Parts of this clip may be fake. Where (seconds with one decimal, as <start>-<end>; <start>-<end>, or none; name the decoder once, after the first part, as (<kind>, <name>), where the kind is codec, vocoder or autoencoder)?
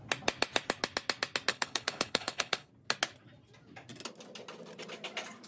1.5-2.7 (codec, HILCodec)